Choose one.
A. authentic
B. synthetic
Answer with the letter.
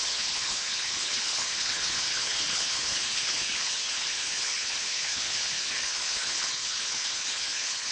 B